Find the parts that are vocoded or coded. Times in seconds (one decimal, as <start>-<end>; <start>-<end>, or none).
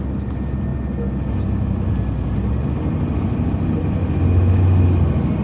none